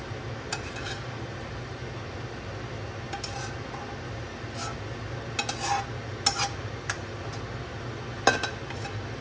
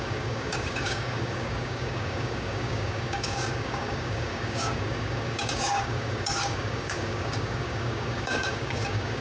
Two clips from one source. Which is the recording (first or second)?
first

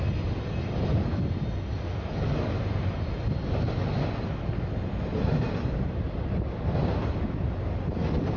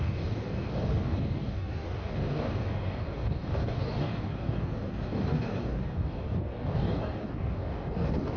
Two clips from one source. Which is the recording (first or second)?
first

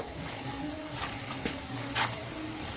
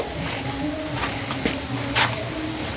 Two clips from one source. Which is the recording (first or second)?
second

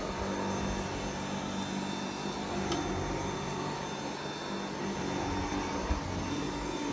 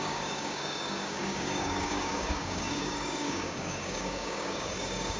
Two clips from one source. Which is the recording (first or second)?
first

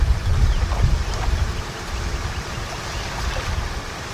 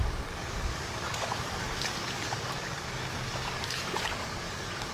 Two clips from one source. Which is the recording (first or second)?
first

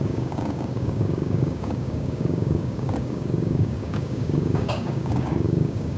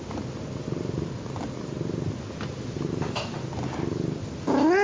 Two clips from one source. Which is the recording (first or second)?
second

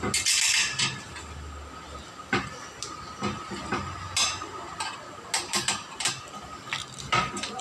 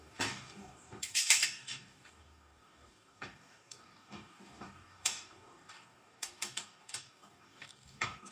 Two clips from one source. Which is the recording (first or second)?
first